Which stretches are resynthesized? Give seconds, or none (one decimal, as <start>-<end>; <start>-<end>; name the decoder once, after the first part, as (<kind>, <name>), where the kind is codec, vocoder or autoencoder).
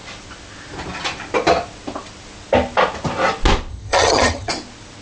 3.7-4.5 (vocoder, HiFi-GAN)